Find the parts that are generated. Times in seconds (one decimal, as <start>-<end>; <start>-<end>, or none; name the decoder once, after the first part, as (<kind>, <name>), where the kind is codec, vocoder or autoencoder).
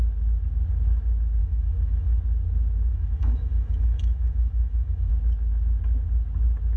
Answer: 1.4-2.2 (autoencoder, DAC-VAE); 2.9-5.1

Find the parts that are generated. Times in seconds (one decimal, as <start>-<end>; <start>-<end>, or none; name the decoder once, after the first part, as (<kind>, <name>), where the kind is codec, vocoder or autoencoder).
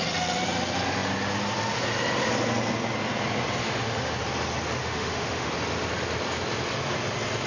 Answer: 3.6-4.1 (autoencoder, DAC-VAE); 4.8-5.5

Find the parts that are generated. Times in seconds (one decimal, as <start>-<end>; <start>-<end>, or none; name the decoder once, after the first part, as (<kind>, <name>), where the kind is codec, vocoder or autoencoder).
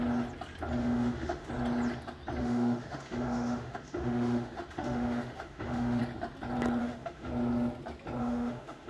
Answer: 0.8-1.5 (autoencoder, DAC-VAE); 2.4-6.0; 6.8-7.3; 8.2-8.9